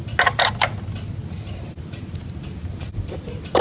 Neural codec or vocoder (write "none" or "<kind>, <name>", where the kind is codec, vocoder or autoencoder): none